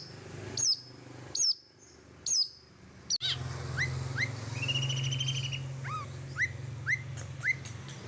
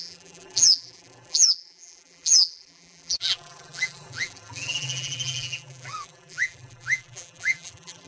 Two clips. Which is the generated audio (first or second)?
second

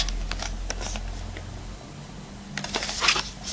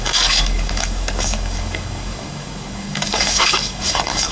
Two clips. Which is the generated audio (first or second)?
second